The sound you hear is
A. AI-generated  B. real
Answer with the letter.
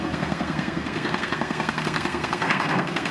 A